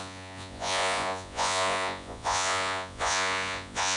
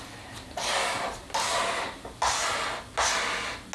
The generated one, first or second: first